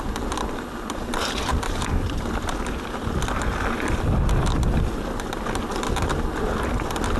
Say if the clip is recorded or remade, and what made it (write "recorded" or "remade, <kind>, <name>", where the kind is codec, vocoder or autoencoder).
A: recorded